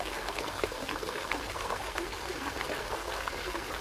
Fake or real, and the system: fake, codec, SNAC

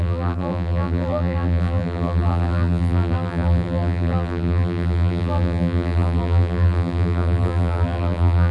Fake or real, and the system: fake, vocoder, BigVGAN v2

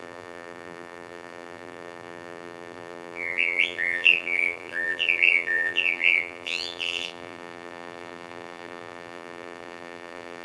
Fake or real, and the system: fake, vocoder, BigVGAN v2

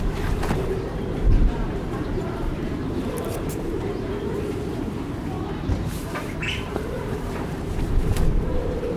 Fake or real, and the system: fake, vocoder, BigVGAN v2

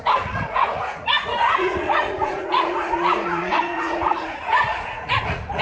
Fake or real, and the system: fake, vocoder, Vocos